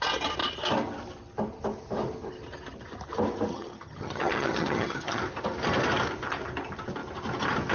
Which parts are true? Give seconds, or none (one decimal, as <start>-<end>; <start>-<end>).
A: 0.0-3.5; 5.2-7.7